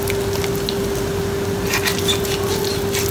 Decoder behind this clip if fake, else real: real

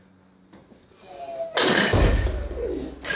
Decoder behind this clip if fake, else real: real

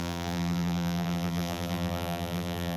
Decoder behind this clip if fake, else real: fake, vocoder, BigVGAN v2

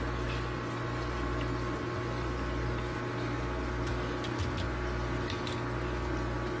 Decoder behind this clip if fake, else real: real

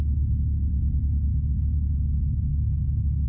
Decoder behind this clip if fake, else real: real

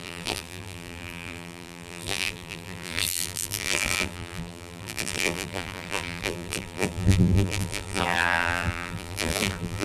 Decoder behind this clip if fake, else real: fake, vocoder, BigVGAN v2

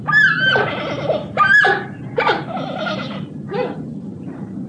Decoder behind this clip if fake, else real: fake, vocoder, BigVGAN v2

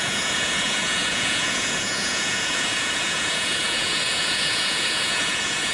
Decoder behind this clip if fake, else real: fake, vocoder, Vocos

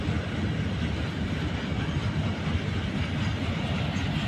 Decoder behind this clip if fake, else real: real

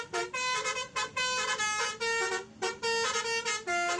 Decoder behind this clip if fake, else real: real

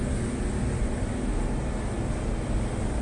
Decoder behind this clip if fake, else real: real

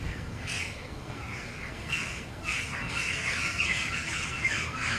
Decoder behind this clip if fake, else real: fake, codec, SNAC